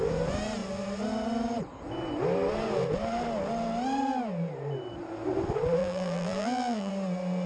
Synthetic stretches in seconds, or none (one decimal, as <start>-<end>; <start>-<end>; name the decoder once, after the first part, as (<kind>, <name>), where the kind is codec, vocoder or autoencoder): 5.8-6.9 (vocoder, BigVGAN v2)